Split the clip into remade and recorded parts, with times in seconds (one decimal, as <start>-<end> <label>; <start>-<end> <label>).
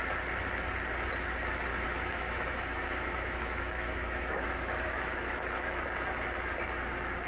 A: 0.0-1.7 recorded; 1.7-5.8 remade; 5.8-7.3 recorded